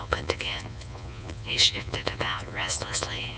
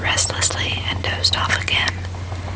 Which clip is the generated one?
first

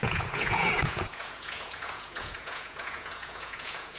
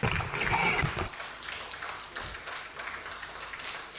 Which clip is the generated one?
first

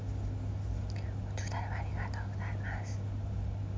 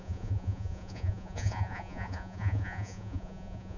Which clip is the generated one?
second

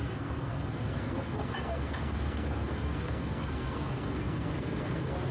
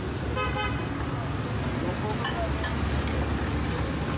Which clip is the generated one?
first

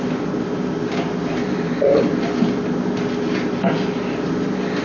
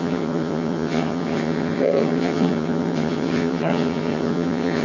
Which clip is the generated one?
second